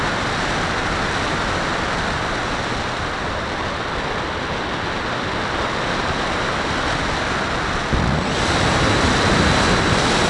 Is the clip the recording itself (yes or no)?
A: yes